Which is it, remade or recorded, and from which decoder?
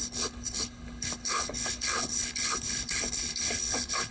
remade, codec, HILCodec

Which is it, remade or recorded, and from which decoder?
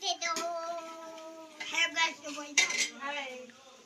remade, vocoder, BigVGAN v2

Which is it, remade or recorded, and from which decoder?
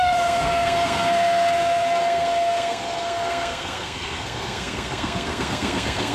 remade, codec, SNAC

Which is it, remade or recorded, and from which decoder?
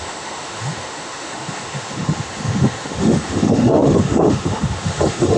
remade, autoencoder, DAC-VAE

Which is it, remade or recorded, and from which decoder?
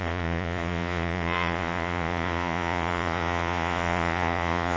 remade, vocoder, Vocos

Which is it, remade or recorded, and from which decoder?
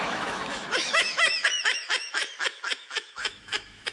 remade, autoencoder, DAC-VAE